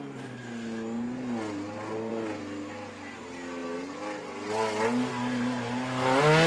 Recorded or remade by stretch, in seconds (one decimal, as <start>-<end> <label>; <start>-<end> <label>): 0.0-6.5 recorded